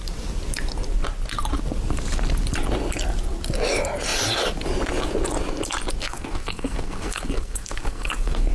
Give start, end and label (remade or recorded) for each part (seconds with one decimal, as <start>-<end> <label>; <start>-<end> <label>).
0.0-6.0 recorded; 6.0-8.5 remade